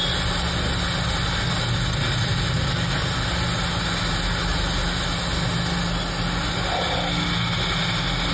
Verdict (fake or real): real